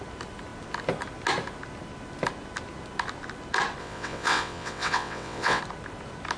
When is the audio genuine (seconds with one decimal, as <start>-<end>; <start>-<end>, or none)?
0.0-3.8; 5.6-6.4